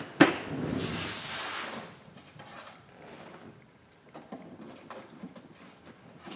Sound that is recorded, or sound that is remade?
remade